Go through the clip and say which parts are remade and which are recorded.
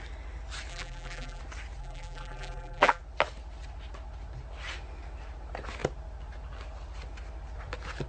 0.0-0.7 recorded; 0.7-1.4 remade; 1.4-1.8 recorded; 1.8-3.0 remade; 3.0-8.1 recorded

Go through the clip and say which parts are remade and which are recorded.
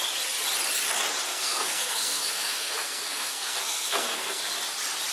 0.0-1.3 recorded; 1.3-4.4 remade; 4.4-5.1 recorded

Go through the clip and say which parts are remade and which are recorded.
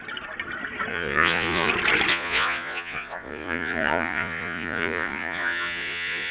0.0-0.9 recorded; 0.9-1.7 remade; 1.7-2.1 recorded; 2.1-6.3 remade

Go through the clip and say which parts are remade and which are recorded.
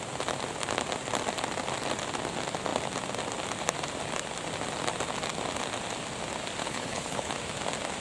0.0-6.6 recorded; 6.6-7.3 remade; 7.3-8.0 recorded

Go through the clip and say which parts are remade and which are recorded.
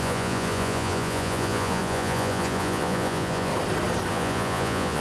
0.0-3.5 remade; 3.5-4.1 recorded; 4.1-5.0 remade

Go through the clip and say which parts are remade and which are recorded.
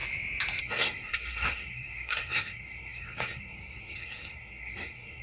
0.0-0.6 recorded; 0.6-5.2 remade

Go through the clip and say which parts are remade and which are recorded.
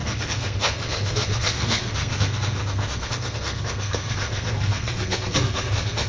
0.0-6.1 remade